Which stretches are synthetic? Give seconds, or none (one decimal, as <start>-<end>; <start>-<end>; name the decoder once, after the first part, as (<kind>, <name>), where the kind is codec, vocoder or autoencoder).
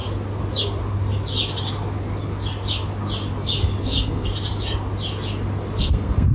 3.8-4.3 (codec, SNAC); 5.8-6.3